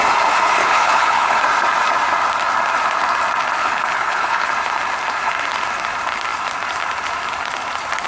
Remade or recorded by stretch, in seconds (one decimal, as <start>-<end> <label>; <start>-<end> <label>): 0.0-0.6 recorded; 0.6-1.4 remade; 1.4-3.6 recorded; 3.6-4.5 remade; 4.5-8.1 recorded